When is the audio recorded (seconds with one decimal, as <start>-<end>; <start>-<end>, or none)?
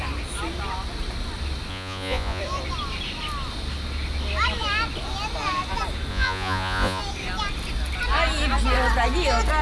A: 0.0-1.7; 2.4-6.1; 7.0-9.6